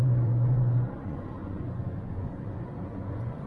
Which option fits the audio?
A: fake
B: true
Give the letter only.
A